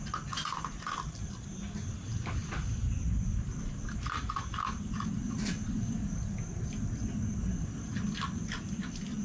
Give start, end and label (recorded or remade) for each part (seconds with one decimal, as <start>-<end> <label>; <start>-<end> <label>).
0.0-9.2 recorded